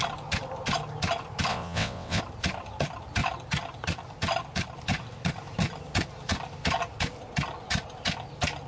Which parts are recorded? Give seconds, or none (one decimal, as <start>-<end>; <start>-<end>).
0.0-1.5; 2.2-8.7